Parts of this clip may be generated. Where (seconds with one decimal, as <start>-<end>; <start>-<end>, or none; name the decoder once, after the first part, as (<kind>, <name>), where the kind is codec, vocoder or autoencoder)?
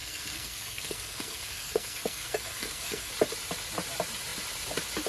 0.0-3.1 (codec, SNAC)